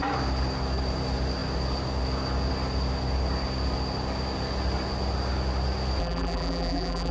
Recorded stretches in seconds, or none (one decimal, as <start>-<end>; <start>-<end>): 0.0-6.0